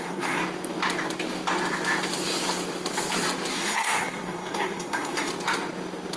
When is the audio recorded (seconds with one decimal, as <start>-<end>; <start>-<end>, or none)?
0.4-3.5; 5.3-6.2